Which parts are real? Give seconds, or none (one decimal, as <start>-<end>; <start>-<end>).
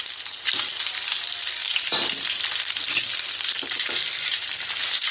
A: 0.0-5.1